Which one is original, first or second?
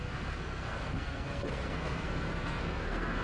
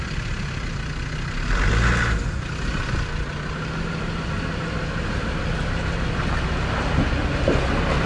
second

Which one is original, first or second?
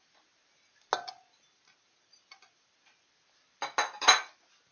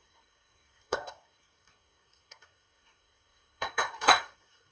first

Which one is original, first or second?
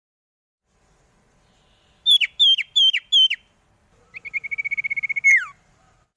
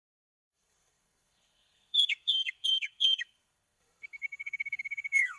first